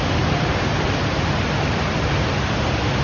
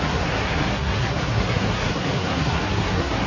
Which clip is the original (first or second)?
first